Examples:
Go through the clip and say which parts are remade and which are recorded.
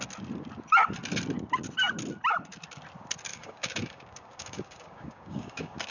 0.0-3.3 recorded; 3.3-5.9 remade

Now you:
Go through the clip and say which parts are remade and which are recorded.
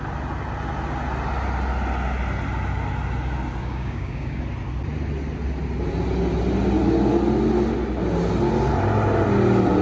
0.0-3.6 recorded; 3.6-4.4 remade; 4.4-9.8 recorded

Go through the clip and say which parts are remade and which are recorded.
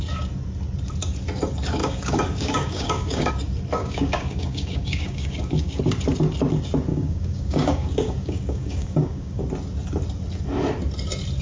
0.0-1.8 recorded; 1.8-3.3 remade; 3.3-3.8 recorded; 3.8-5.8 remade; 5.8-6.9 recorded; 6.9-9.4 remade; 9.4-11.4 recorded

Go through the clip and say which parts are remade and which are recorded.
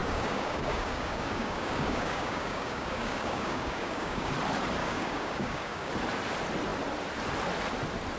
0.0-4.3 remade; 4.3-4.8 recorded; 4.8-5.9 remade; 5.9-8.2 recorded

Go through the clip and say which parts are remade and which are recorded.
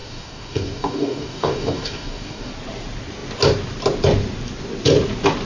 0.0-2.5 remade; 2.5-5.5 recorded